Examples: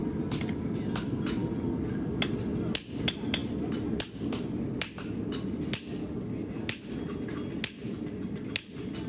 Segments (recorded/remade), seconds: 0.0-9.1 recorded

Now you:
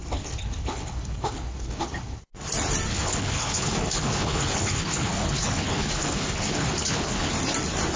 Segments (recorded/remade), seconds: 0.0-2.2 remade; 2.2-2.9 recorded; 2.9-7.3 remade; 7.3-8.0 recorded

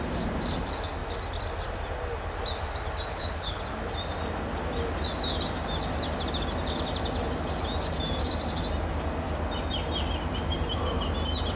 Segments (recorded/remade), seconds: 0.0-3.1 recorded; 3.1-3.6 remade; 3.6-11.6 recorded